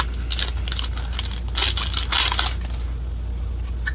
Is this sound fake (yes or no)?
no